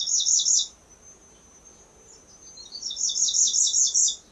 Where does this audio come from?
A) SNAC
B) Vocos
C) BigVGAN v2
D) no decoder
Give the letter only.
D